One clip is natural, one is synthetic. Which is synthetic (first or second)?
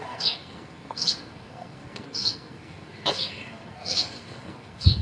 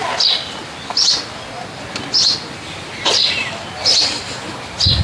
first